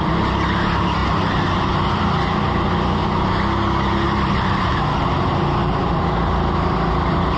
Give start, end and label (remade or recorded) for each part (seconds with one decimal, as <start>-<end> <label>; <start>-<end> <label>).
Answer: 0.0-7.4 recorded